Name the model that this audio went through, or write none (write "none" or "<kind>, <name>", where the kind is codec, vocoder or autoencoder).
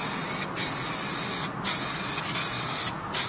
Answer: none